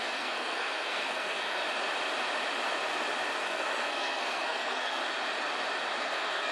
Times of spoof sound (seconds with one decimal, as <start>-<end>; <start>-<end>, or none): 0.0-1.6; 3.4-5.0; 6.0-6.5